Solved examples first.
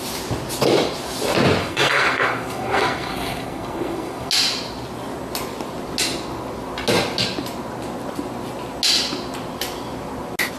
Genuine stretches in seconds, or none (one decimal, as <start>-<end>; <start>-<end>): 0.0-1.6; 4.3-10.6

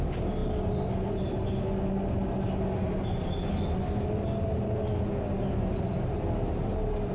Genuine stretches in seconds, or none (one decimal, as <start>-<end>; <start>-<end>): 0.0-7.1

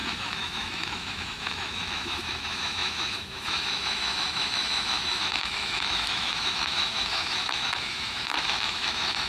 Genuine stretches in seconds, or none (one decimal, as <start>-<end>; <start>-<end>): none

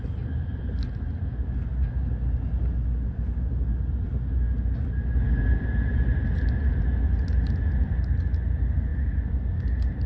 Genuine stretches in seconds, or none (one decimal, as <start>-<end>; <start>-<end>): 0.0-10.1

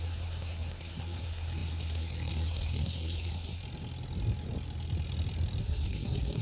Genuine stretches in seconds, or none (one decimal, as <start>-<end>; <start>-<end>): 3.6-5.6

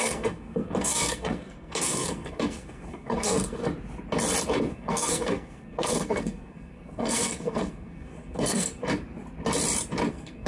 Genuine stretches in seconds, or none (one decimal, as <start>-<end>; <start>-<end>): 3.6-4.7; 8.8-10.1